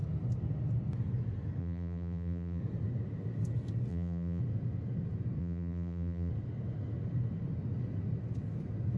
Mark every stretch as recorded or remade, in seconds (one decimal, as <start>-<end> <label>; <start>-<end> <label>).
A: 0.0-1.6 recorded; 1.6-2.6 remade; 2.6-3.9 recorded; 3.9-4.4 remade; 4.4-5.4 recorded; 5.4-6.3 remade; 6.3-9.0 recorded